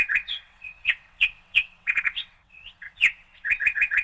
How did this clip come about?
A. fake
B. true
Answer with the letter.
A